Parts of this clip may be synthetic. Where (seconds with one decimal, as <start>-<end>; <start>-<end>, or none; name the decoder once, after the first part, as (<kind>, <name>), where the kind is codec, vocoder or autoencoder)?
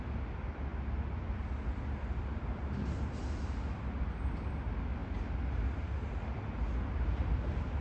none